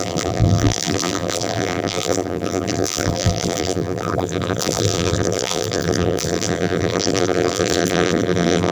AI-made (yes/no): yes